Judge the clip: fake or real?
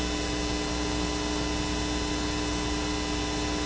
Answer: real